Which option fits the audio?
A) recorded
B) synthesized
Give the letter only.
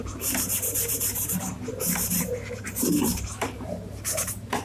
B